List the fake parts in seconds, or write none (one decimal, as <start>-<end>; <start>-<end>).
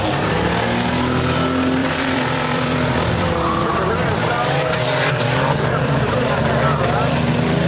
1.8-6.4